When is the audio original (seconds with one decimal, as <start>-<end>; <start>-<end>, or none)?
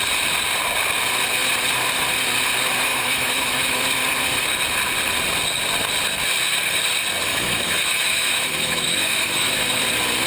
0.0-2.9; 3.8-7.3; 9.8-10.3